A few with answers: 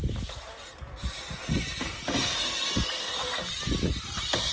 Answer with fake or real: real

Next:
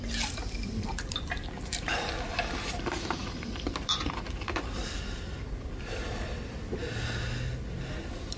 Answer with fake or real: real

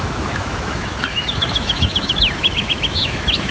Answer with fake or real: fake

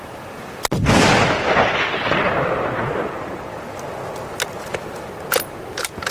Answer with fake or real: real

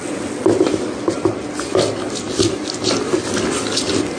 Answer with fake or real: real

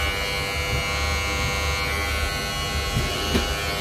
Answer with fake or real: real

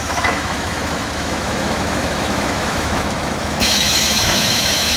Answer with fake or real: fake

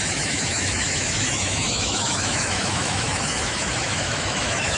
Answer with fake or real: fake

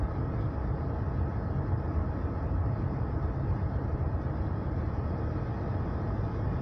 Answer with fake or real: real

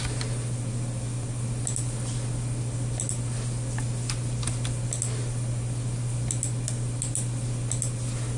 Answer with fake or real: real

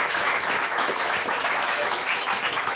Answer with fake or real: fake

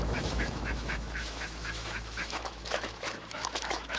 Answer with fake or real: fake